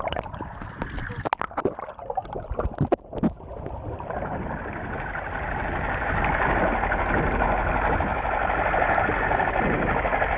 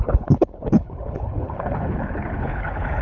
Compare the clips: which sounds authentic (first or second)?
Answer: first